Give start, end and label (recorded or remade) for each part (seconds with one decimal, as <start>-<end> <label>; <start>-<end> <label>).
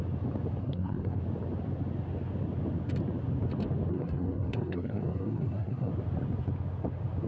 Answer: 0.0-0.6 recorded; 0.6-1.2 remade; 1.2-3.9 recorded; 3.9-5.9 remade; 5.9-7.3 recorded